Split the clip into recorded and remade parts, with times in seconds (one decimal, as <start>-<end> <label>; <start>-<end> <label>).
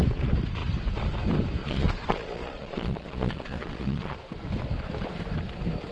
0.0-1.6 recorded; 1.6-4.2 remade; 4.2-5.9 recorded